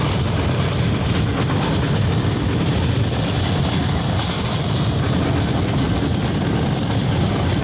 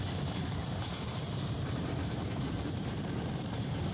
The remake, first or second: second